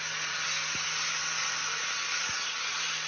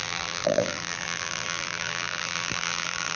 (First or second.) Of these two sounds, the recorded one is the first